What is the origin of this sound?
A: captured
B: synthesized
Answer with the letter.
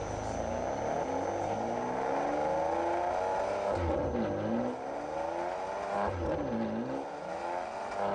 A